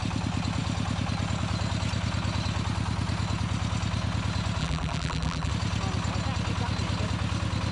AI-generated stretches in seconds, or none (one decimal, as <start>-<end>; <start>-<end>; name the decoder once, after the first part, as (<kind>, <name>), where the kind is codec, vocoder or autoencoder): 4.6-5.5 (vocoder, BigVGAN v2)